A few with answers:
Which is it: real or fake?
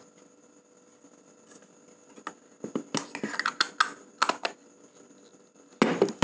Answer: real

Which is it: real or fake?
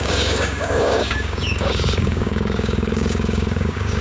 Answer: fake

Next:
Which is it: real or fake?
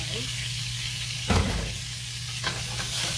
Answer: fake